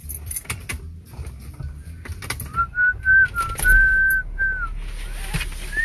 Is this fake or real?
real